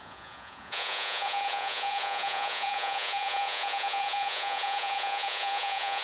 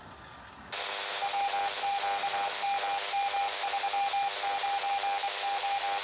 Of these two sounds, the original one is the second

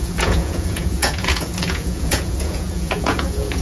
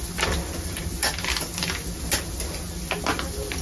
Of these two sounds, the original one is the second